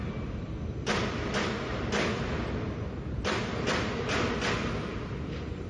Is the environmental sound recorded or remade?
recorded